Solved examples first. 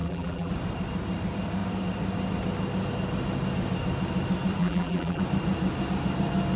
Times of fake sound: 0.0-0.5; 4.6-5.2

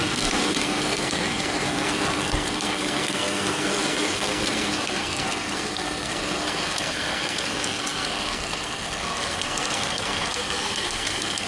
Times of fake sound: 0.0-11.5

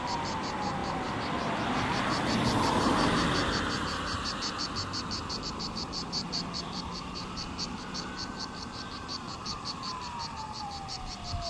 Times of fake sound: 0.0-0.8; 5.4-11.5

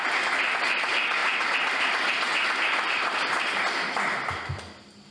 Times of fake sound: none

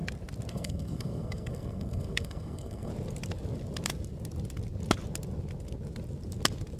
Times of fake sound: 0.5-2.9

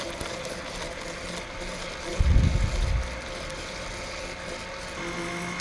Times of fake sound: none

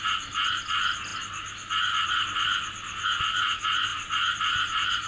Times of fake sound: none

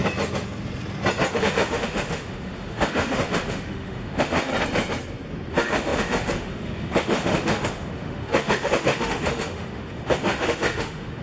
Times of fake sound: 1.3-4.5; 5.5-11.2